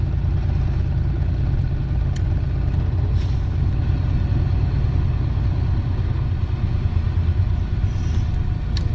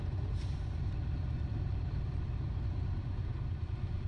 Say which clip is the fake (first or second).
second